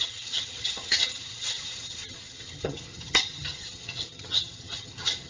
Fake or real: fake